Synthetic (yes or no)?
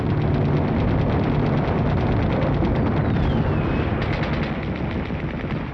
no